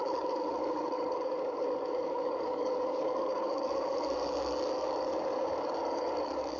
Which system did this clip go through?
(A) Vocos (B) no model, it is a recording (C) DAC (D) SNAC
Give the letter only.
C